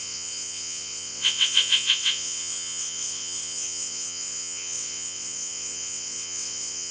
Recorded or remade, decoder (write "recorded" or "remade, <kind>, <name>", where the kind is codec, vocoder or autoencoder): remade, vocoder, WaveNeXt